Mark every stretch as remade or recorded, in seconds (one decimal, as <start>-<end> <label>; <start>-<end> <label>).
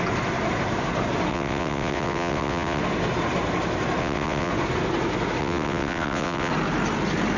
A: 0.0-1.3 recorded; 1.3-2.8 remade; 2.8-4.0 recorded; 4.0-4.5 remade; 4.5-5.4 recorded; 5.4-6.5 remade; 6.5-7.4 recorded